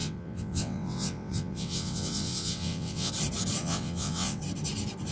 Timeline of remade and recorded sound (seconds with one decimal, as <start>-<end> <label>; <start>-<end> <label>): 0.0-3.1 remade; 3.1-3.6 recorded; 3.6-4.4 remade; 4.4-5.1 recorded